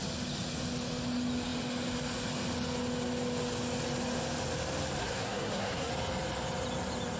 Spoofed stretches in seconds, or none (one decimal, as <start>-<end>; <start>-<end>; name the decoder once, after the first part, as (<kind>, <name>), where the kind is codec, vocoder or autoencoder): 5.0-5.9 (codec, SNAC)

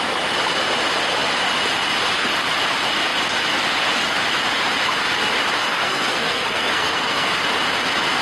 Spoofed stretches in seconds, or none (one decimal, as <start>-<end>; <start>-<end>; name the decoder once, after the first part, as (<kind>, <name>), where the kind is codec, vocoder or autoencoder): 5.6-7.3 (codec, SNAC)

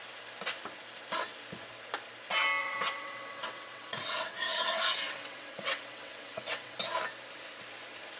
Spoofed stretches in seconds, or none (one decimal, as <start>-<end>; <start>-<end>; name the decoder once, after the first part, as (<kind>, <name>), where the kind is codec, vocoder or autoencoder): 2.6-6.8 (vocoder, WaveNeXt)

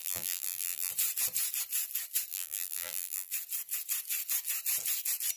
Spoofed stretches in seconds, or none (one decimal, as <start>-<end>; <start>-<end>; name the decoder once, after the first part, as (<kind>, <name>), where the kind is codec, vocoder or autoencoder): 0.0-0.9 (vocoder, BigVGAN v2); 2.3-3.3

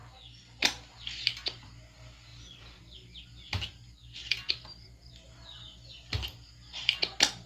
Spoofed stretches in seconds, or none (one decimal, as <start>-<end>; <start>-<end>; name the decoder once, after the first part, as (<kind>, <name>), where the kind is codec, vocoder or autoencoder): 0.0-0.6 (vocoder, BigVGAN v2); 2.3-2.8; 4.2-5.1

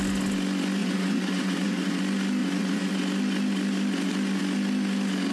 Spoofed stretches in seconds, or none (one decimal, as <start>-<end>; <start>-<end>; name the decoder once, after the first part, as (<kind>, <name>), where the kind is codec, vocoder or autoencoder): 0.8-2.0 (vocoder, Vocos); 2.4-2.9

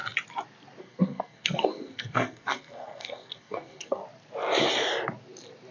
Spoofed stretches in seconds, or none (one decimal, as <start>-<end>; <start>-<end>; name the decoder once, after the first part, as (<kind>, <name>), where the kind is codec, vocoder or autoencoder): 0.8-4.0 (codec, SNAC)

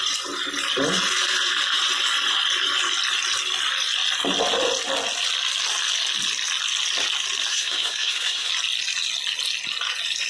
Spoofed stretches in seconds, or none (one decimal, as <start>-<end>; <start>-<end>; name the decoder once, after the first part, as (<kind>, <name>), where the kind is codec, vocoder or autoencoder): 7.5-8.5 (codec, SNAC)